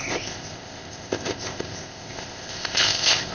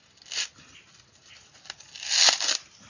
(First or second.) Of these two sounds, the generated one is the first